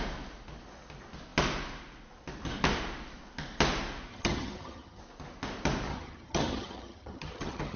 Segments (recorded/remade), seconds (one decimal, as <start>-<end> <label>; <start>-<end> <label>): 0.0-4.1 recorded; 4.1-5.0 remade; 5.0-5.9 recorded; 5.9-7.8 remade